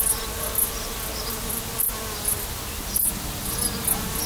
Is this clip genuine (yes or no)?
yes